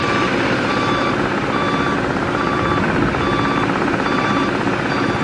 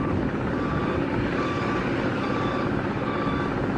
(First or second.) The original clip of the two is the first